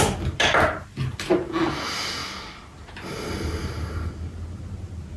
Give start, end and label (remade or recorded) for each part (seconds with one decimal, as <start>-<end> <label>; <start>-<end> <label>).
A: 0.0-5.2 recorded